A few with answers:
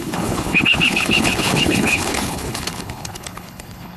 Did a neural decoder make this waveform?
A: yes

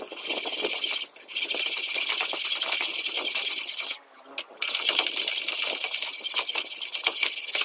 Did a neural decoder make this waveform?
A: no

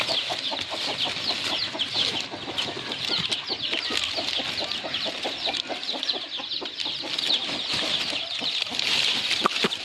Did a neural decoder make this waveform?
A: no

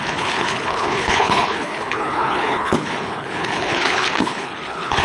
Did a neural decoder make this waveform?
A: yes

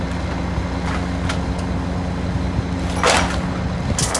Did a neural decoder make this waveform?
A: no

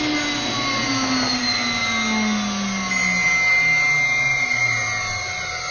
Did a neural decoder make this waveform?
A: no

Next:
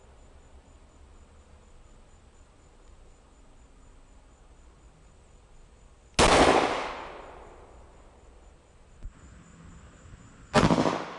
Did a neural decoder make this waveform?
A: no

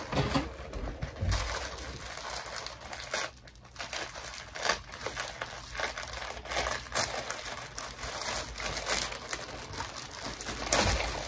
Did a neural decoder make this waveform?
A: no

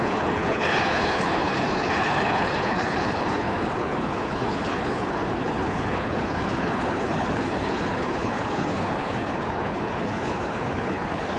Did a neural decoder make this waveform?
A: yes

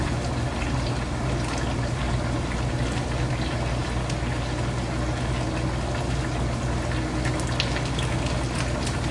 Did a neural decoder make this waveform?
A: no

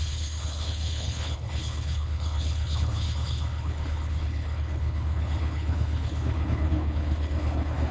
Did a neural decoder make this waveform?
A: yes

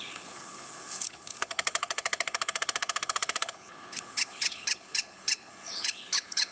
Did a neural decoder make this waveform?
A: yes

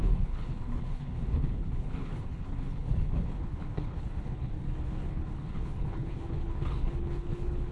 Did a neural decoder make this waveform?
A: yes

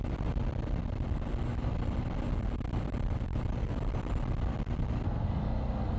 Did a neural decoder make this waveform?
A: no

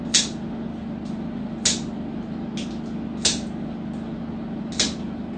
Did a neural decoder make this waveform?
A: no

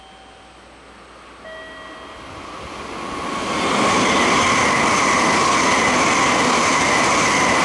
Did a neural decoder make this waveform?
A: no